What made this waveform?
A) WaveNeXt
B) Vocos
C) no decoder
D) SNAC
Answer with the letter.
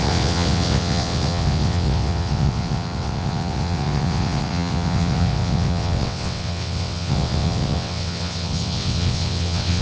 A